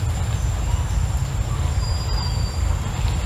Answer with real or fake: real